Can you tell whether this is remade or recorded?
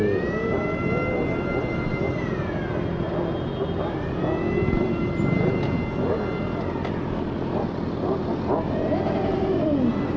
recorded